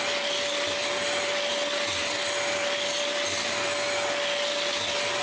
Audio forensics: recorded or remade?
recorded